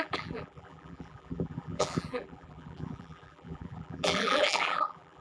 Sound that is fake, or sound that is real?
fake